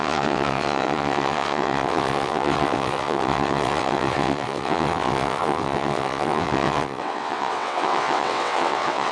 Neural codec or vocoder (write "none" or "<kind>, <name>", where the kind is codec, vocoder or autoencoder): vocoder, WaveNeXt